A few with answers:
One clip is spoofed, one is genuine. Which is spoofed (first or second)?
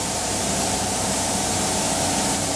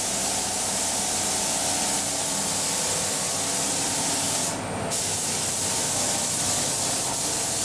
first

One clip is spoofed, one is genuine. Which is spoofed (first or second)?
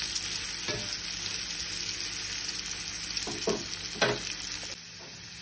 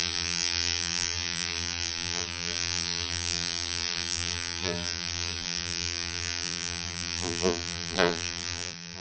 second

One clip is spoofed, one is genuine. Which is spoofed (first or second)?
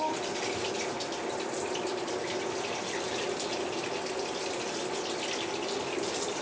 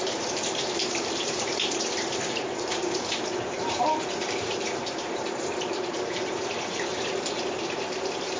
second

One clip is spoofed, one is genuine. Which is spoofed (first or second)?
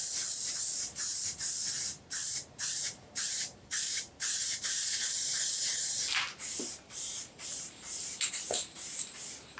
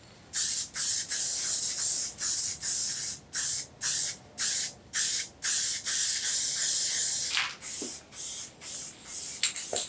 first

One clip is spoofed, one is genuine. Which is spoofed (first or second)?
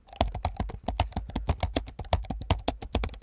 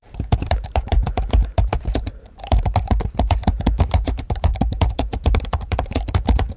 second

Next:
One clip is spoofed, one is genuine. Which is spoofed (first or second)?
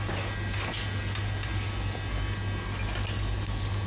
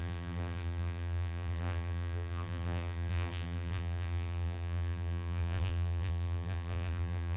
second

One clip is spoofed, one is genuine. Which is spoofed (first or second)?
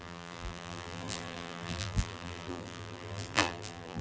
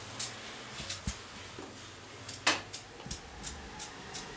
first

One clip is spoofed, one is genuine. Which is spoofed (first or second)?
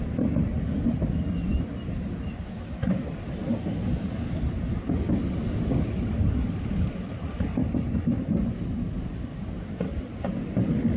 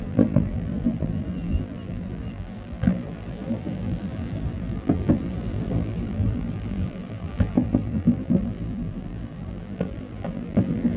second